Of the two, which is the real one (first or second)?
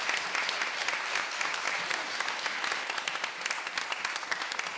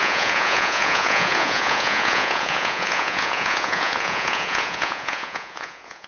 first